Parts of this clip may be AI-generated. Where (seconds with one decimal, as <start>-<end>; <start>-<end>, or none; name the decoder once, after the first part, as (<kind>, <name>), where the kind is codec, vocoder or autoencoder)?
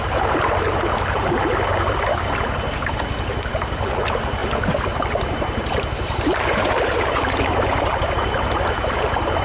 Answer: 0.0-9.4 (vocoder, BigVGAN v2)